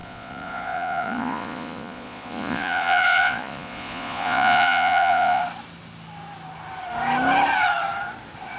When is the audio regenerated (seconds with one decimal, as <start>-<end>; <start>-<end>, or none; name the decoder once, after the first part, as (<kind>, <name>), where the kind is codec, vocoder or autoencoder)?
0.0-5.4 (vocoder, Vocos)